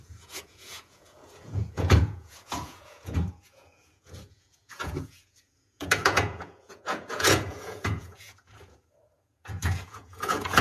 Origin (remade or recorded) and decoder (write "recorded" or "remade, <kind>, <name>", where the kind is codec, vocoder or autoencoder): remade, vocoder, Vocos